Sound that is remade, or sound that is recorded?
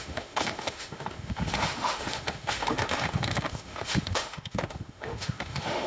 remade